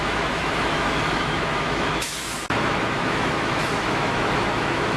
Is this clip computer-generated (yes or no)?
yes